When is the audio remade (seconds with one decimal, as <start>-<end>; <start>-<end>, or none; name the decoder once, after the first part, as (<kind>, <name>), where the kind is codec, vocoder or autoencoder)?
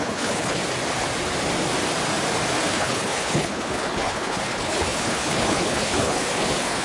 0.0-0.6 (codec, HILCodec); 2.7-6.8